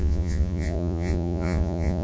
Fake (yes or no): yes